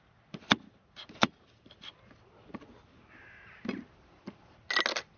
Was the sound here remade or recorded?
recorded